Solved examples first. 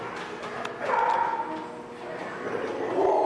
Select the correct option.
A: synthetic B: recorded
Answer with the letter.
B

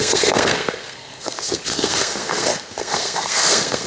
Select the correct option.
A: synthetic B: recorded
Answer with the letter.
A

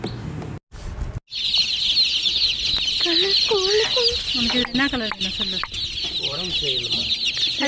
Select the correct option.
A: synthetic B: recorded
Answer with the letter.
B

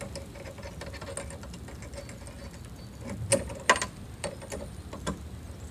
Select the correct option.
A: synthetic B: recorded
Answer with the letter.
B